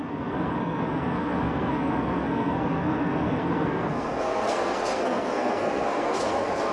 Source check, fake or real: fake